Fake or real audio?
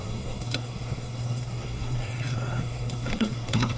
fake